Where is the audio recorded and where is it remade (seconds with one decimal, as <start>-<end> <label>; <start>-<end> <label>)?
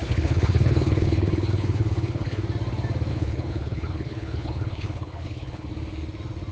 0.0-2.4 remade; 2.4-3.1 recorded; 3.1-5.7 remade; 5.7-6.5 recorded